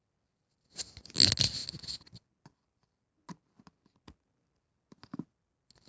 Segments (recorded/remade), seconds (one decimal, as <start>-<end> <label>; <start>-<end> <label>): 0.0-5.9 recorded